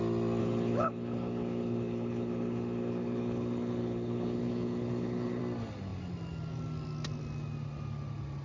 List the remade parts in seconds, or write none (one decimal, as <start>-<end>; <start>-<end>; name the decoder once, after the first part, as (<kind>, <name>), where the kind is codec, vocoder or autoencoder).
0.4-5.4 (codec, HILCodec)